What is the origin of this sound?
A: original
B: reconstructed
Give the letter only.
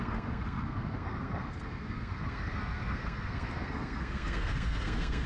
B